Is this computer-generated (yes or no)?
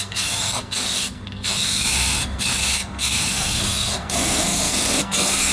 yes